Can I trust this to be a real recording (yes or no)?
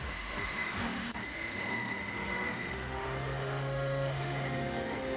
no